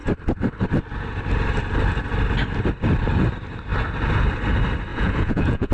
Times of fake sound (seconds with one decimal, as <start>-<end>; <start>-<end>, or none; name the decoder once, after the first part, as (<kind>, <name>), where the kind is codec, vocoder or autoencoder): 4.9-5.7 (vocoder, Vocos)